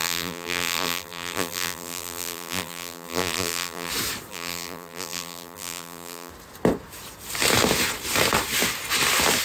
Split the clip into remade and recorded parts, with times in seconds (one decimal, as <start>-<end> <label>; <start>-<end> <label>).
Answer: 0.0-3.9 remade; 3.9-4.3 recorded; 4.3-6.3 remade; 6.3-9.4 recorded